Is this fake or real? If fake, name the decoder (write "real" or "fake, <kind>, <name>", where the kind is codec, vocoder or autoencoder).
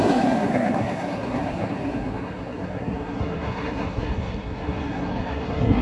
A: fake, codec, SNAC